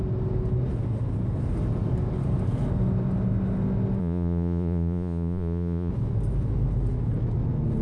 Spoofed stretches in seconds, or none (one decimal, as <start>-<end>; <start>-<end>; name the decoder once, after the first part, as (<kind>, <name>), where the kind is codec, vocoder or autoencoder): 4.0-5.9 (vocoder, Vocos)